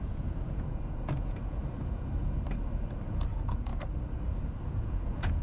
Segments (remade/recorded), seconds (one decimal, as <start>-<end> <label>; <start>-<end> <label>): 0.0-1.6 remade; 1.6-3.1 recorded; 3.1-3.7 remade; 3.7-4.7 recorded; 4.7-5.4 remade